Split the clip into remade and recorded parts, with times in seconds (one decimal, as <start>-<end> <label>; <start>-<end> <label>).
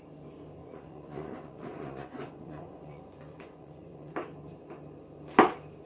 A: 0.0-0.6 recorded; 0.6-4.1 remade; 4.1-5.9 recorded